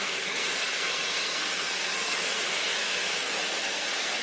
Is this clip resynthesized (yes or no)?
yes